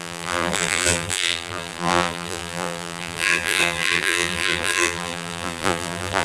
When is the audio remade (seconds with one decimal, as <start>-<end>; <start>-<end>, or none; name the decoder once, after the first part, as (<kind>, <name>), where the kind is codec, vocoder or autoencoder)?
0.0-6.2 (vocoder, BigVGAN v2)